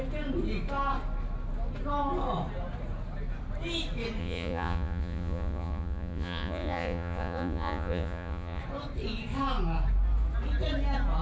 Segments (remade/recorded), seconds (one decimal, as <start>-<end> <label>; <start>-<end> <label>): 0.0-4.2 recorded; 4.2-8.6 remade; 8.6-11.2 recorded